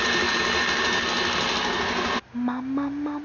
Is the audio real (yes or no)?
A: yes